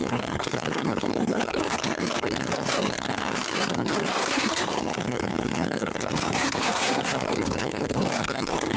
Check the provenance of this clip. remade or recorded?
remade